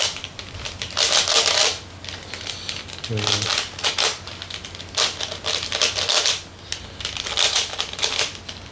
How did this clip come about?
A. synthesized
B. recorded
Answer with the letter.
B